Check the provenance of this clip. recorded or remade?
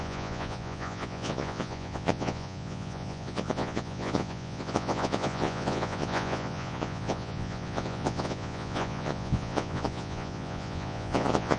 remade